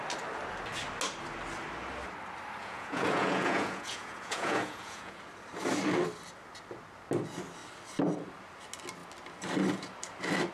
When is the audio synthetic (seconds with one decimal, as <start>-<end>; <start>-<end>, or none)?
2.6-5.2